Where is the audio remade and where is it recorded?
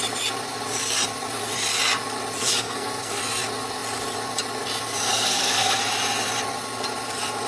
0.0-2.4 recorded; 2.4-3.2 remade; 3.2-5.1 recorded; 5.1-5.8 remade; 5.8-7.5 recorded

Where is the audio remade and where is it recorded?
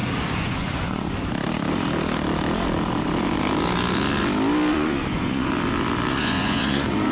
0.0-1.1 remade; 1.1-4.7 recorded; 4.7-5.5 remade; 5.5-6.1 recorded; 6.1-7.1 remade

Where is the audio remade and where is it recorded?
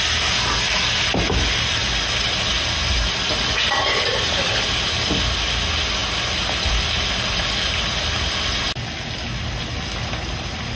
0.0-10.8 recorded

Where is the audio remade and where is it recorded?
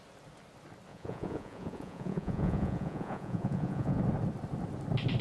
0.0-0.9 recorded; 0.9-4.0 remade; 4.0-5.2 recorded